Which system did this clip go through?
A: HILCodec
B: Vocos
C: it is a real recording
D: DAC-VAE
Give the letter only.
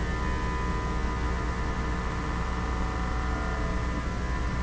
C